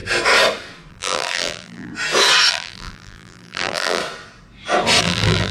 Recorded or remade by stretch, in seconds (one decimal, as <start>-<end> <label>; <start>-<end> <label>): 0.0-0.9 recorded; 0.9-1.9 remade; 1.9-2.5 recorded; 2.5-4.0 remade; 4.0-5.0 recorded; 5.0-5.5 remade